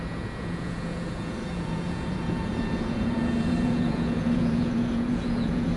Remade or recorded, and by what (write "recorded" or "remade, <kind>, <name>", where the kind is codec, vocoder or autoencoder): remade, vocoder, Vocos